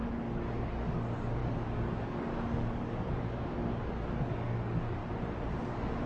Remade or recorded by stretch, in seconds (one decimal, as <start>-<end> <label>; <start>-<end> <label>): 0.0-5.0 remade; 5.0-5.6 recorded; 5.6-6.1 remade